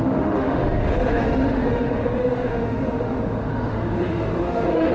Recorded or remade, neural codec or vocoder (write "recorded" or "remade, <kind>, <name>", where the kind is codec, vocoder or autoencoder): remade, autoencoder, DAC-VAE